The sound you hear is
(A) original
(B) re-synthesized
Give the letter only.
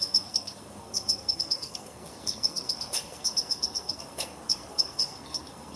B